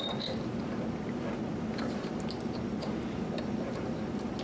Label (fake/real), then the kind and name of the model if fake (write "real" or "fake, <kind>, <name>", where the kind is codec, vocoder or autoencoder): real